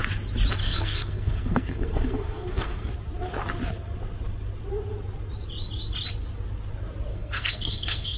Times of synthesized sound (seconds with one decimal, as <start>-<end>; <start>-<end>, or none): 0.6-2.9; 7.1-8.2